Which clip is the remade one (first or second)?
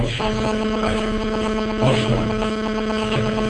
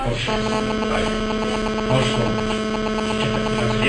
first